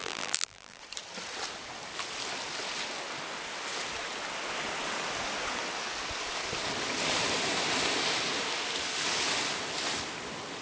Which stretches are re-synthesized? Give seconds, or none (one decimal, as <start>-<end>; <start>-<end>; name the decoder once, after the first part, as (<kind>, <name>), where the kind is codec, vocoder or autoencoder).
0.0-0.8 (vocoder, BigVGAN v2)